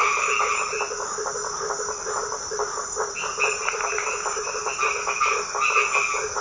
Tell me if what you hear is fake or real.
real